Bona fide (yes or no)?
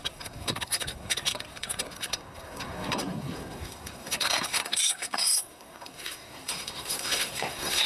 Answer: no